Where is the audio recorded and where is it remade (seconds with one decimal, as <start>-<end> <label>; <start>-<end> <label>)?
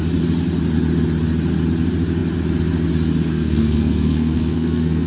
0.0-3.3 recorded; 3.3-5.1 remade